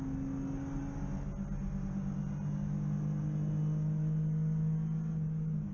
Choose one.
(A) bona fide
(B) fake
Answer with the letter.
A